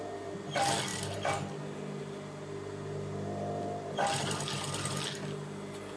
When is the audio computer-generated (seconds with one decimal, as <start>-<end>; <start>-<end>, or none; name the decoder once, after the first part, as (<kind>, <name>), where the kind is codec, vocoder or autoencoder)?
none